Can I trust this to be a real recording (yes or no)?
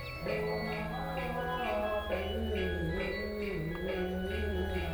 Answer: yes